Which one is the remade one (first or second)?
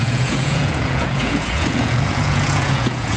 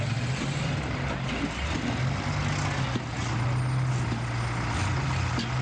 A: first